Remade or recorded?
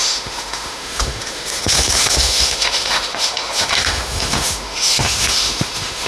remade